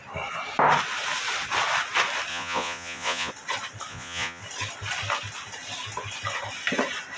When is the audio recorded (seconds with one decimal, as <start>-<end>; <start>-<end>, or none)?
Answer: 0.0-2.3; 3.3-3.9; 4.4-7.2